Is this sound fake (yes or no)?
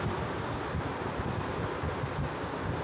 no